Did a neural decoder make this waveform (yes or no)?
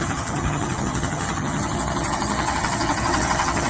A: yes